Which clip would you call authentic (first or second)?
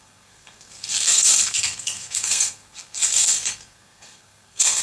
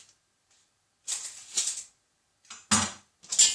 second